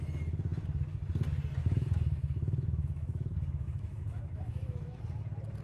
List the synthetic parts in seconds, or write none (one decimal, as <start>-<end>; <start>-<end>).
1.6-5.0